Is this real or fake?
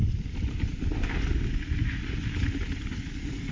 real